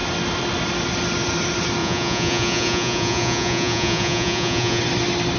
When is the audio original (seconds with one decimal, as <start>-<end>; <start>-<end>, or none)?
0.0-1.8; 4.8-5.4